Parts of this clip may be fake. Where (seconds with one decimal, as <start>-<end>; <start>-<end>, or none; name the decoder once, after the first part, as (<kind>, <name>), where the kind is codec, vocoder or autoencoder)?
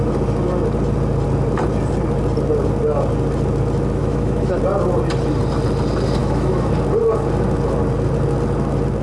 4.0-4.6 (autoencoder, DAC-VAE); 6.2-6.7